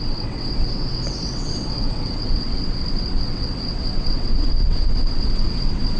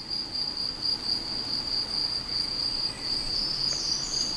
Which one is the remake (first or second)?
first